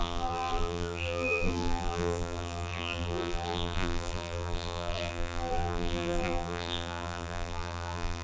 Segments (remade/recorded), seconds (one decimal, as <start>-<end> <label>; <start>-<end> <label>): 0.0-8.2 remade